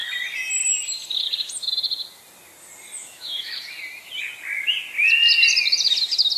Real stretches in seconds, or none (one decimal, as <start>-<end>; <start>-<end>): 0.0-3.0; 3.5-6.4